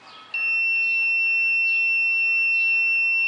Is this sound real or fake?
real